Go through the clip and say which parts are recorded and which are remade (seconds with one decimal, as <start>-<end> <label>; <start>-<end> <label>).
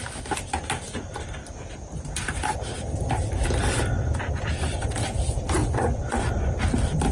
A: 0.0-5.6 recorded; 5.6-6.5 remade; 6.5-7.1 recorded